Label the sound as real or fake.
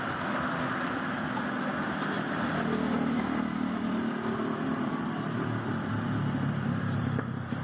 fake